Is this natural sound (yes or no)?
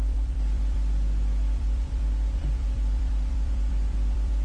no